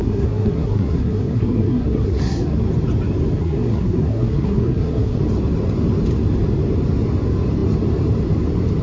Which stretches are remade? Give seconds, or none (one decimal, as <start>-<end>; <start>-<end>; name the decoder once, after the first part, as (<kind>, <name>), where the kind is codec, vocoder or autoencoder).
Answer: 0.0-2.6 (codec, SNAC); 3.4-5.2